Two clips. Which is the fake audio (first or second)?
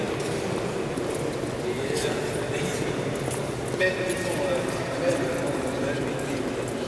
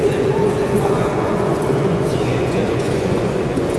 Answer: second